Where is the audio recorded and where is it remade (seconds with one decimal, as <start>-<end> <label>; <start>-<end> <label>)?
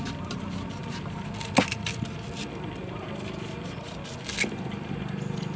0.0-5.6 recorded